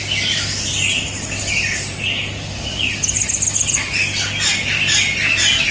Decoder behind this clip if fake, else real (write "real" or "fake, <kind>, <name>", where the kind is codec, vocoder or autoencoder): real